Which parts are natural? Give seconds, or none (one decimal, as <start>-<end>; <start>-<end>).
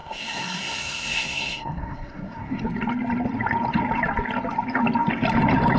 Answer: 2.6-5.8